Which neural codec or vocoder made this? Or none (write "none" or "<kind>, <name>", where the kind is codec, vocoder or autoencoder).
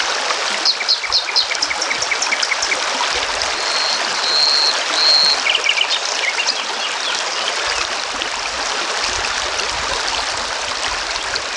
none